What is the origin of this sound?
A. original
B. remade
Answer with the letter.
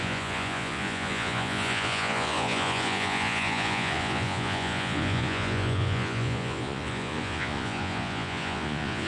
B